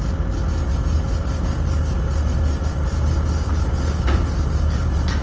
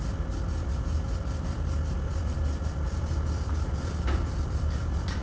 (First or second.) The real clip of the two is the first